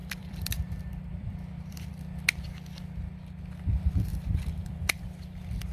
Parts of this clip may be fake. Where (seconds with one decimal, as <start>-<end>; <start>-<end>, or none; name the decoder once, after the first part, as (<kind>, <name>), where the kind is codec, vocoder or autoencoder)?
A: 0.0-1.9 (vocoder, BigVGAN v2); 4.1-5.0